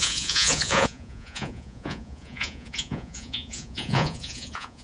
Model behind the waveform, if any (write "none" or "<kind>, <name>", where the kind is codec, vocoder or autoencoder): vocoder, Vocos